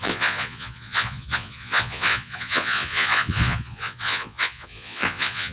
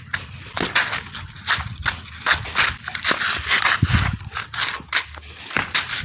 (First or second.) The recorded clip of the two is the second